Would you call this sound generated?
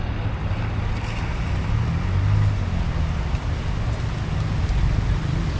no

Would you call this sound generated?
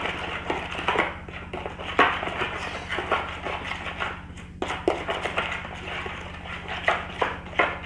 no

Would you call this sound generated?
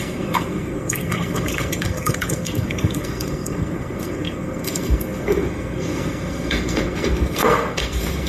yes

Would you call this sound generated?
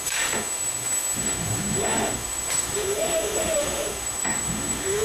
yes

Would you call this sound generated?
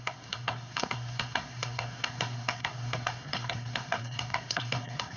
yes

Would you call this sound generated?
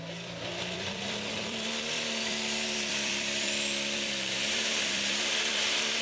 yes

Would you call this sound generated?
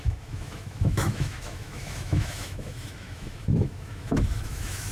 yes